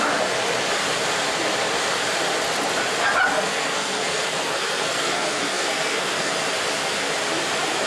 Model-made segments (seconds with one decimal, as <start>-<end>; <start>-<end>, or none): 3.3-6.3